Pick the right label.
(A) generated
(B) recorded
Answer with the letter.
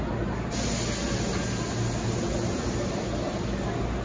B